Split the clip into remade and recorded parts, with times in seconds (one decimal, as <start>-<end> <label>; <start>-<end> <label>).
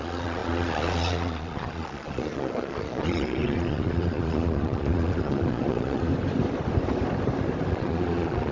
0.0-6.1 remade; 6.1-7.7 recorded; 7.7-8.5 remade